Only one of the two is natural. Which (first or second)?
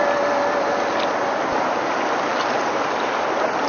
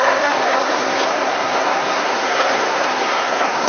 first